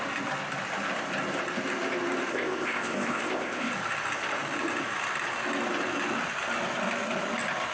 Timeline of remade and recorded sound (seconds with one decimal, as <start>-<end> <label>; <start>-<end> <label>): 0.0-2.3 recorded; 2.3-3.7 remade; 3.7-7.7 recorded